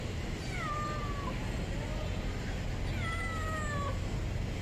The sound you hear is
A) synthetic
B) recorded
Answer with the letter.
B